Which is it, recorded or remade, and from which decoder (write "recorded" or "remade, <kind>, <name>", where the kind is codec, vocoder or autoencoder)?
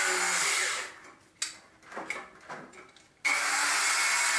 recorded